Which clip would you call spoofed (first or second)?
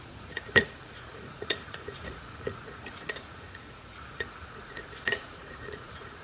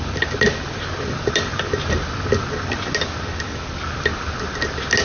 first